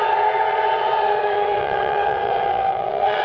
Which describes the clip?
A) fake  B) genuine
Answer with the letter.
A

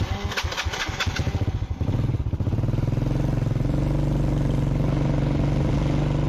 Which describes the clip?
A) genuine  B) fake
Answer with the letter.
A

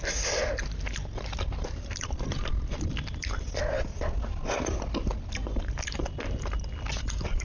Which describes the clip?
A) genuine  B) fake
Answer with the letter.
A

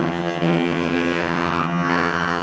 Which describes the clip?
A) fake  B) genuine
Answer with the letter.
A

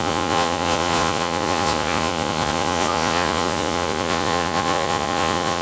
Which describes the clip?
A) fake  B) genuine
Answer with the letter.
A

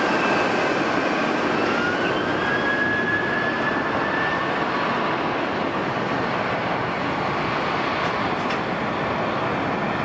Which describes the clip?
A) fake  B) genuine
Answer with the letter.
B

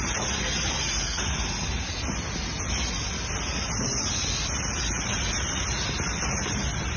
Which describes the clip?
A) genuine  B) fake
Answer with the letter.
A